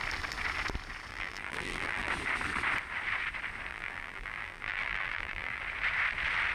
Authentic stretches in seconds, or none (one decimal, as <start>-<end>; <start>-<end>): 0.0-1.1; 2.1-3.7; 5.6-6.5